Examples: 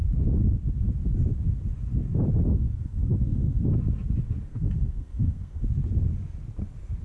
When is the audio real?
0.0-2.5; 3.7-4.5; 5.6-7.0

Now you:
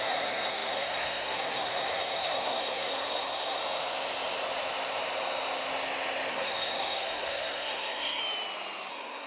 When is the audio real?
3.6-6.3; 8.2-8.9

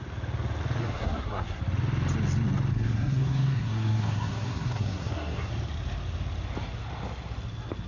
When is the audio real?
0.0-0.8; 1.6-2.7; 5.5-7.9

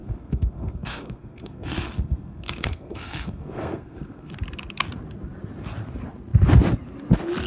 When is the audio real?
4.3-7.5

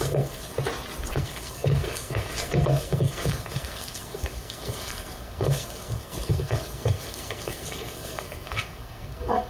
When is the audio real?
0.5-1.1

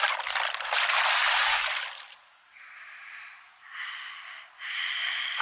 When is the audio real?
0.0-5.4